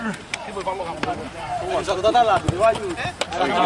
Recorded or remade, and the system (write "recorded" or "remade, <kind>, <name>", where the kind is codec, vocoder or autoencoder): recorded